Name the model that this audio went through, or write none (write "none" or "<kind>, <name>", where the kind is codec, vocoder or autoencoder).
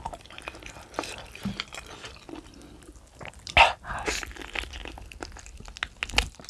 none